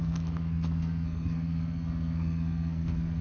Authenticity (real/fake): fake